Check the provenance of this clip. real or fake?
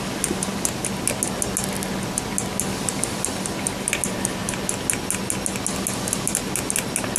real